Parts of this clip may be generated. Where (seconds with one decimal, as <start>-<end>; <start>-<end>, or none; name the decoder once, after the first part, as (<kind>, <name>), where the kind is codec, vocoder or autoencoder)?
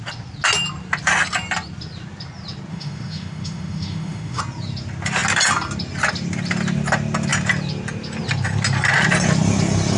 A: 2.7-4.4 (autoencoder, DAC-VAE)